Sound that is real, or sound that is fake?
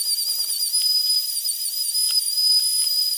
fake